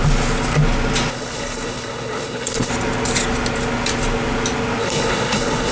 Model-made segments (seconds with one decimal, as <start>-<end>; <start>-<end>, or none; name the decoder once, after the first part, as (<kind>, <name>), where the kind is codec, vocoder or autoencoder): 1.1-2.7 (codec, HILCodec); 4.8-5.7